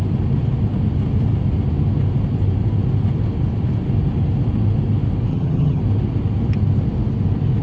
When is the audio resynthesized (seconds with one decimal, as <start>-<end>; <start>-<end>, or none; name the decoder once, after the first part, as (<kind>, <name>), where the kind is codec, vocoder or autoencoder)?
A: 5.3-5.8 (vocoder, HiFi-GAN)